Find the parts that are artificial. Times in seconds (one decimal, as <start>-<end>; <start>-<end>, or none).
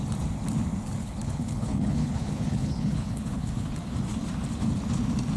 1.0-3.7